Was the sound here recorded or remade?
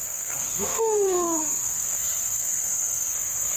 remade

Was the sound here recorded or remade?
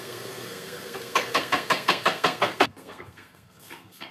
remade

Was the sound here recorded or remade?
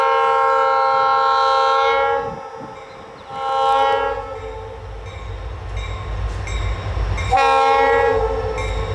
recorded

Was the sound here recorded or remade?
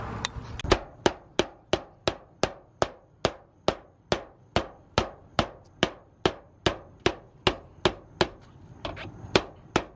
recorded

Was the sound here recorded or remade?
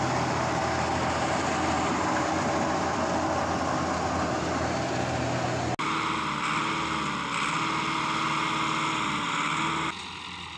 recorded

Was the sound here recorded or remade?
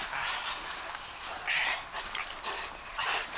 recorded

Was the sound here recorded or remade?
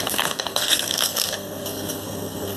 remade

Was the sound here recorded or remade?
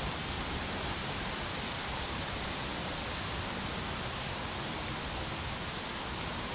recorded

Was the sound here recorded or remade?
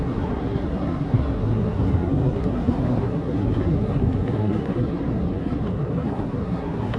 remade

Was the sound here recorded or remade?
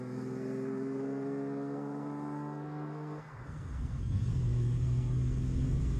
remade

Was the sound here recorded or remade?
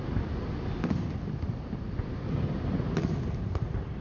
recorded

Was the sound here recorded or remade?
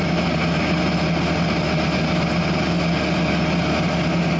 recorded